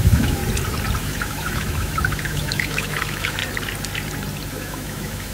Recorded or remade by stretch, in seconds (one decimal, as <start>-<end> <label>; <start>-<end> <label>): 0.0-0.4 remade; 0.4-1.0 recorded; 1.0-3.4 remade; 3.4-4.5 recorded; 4.5-5.3 remade

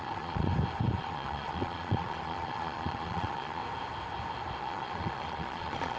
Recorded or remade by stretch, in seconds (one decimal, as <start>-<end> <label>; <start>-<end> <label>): 0.0-0.5 remade; 0.5-1.0 recorded; 1.0-3.6 remade; 3.6-4.6 recorded; 4.6-6.0 remade

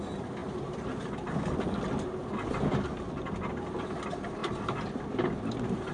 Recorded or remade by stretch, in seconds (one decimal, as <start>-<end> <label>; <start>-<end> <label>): 0.0-5.9 recorded

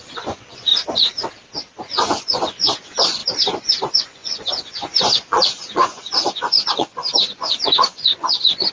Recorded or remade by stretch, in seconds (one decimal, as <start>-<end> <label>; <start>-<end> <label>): 0.0-0.7 remade; 0.7-1.7 recorded; 1.7-3.2 remade; 3.2-3.8 recorded; 3.8-8.7 remade

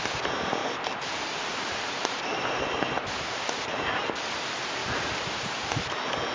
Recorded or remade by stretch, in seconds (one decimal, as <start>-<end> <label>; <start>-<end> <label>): 0.0-0.6 recorded; 0.6-4.1 remade; 4.1-4.8 recorded; 4.8-5.6 remade; 5.6-6.3 recorded

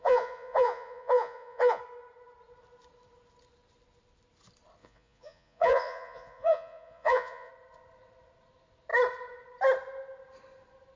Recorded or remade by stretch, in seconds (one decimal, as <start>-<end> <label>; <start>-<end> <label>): 0.0-1.8 remade; 1.8-4.8 recorded; 4.8-7.5 remade; 7.5-11.0 recorded